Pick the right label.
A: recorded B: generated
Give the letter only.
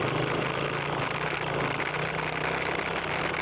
A